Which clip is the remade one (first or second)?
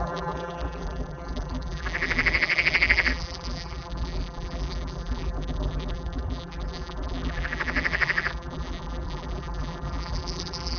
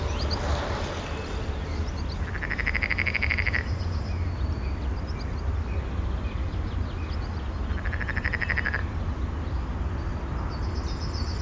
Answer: first